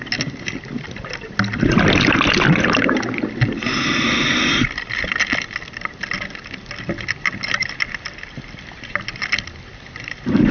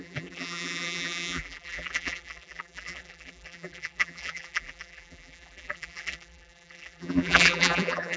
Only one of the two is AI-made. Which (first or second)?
second